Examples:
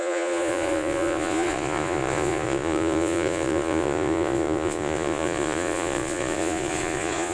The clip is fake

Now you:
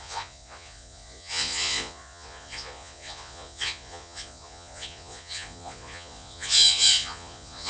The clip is fake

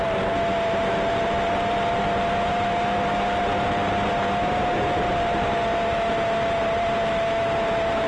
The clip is real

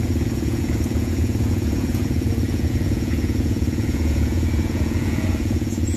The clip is fake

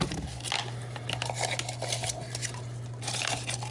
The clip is real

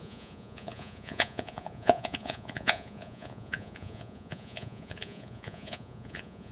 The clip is fake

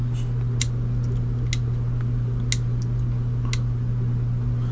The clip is real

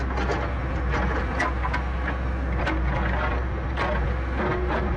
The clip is real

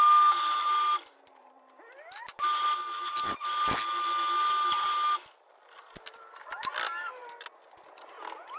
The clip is real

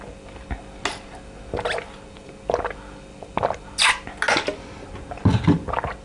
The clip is real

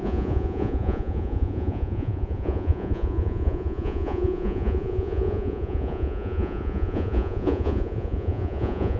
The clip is fake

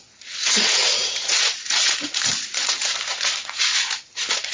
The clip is fake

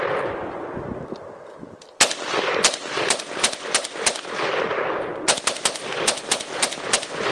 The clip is real